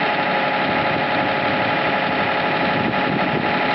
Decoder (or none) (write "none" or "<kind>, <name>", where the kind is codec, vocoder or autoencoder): none